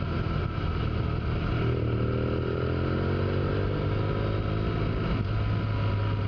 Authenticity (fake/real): real